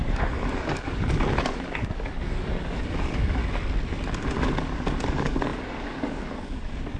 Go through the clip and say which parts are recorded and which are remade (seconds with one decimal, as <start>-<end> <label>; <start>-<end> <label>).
0.0-3.4 remade; 3.4-4.6 recorded; 4.6-7.0 remade